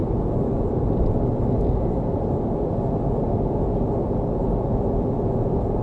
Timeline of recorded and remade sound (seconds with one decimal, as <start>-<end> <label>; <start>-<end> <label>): 0.0-0.7 remade; 0.7-5.8 recorded